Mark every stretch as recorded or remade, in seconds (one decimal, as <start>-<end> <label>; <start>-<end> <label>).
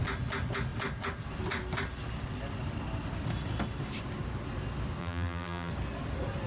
0.0-5.0 recorded; 5.0-5.7 remade; 5.7-6.5 recorded